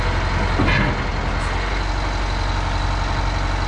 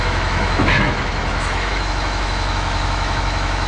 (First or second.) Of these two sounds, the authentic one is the first